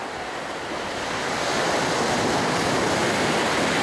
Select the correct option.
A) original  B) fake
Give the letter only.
A